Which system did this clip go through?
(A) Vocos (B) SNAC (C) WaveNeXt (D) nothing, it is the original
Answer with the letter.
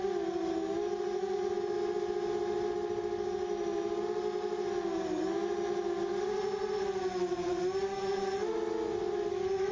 D